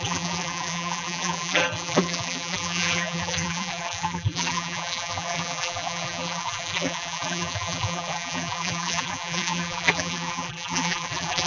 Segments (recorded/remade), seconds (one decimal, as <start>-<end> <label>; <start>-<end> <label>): 0.0-11.5 remade